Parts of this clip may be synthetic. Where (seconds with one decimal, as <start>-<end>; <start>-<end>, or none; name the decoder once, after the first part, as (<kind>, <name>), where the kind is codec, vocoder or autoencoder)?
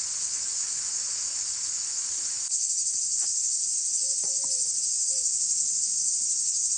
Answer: 0.0-6.8 (autoencoder, DAC-VAE)